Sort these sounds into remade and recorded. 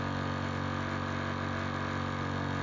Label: recorded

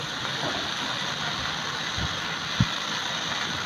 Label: recorded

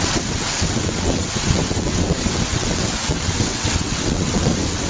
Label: remade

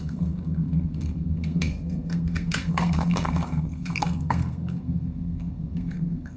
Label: remade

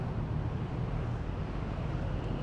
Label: recorded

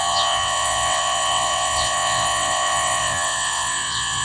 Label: remade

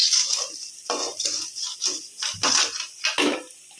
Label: recorded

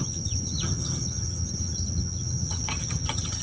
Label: remade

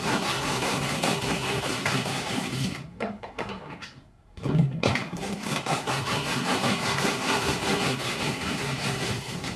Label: remade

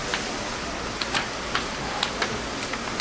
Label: recorded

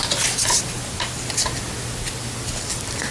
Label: recorded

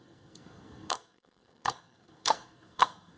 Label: remade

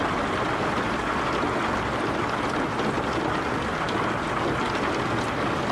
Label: recorded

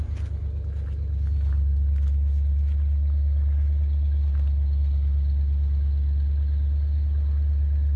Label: recorded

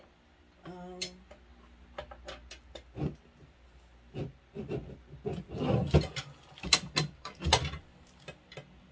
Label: recorded